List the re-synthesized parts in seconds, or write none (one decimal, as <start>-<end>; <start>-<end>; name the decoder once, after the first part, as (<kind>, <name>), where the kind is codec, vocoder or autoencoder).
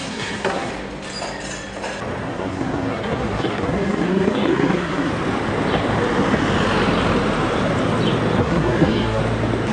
0.0-0.7 (codec, SNAC); 2.2-5.1; 8.4-9.2